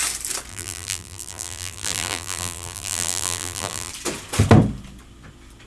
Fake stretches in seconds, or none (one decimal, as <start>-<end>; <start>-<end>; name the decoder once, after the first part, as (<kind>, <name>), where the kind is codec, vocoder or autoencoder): 0.5-3.9 (vocoder, BigVGAN v2)